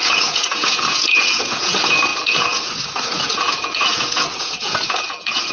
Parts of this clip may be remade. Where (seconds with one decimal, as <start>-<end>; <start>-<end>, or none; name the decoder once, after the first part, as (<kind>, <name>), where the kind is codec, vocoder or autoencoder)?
0.0-5.5 (vocoder, Vocos)